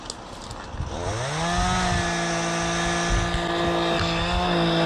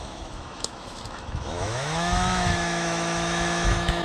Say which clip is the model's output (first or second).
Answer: second